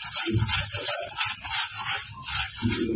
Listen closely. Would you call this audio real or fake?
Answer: real